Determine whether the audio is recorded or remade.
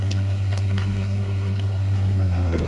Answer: remade